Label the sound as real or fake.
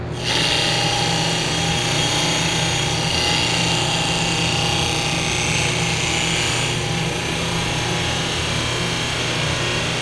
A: real